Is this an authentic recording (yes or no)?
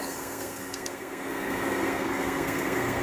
no